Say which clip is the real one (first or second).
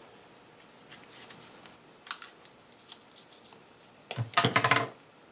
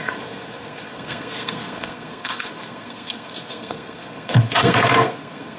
first